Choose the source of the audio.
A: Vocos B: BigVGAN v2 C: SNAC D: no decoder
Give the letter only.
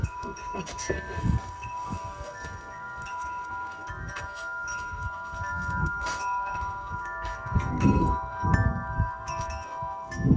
C